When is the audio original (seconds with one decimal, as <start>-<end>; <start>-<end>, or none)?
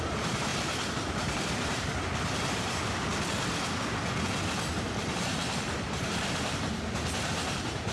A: 0.5-1.1; 3.1-5.1